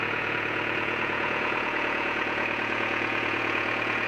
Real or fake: fake